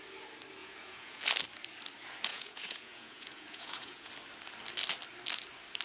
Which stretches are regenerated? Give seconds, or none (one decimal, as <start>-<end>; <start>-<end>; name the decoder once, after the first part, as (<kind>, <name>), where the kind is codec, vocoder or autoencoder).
0.6-1.2 (vocoder, Vocos); 2.3-4.1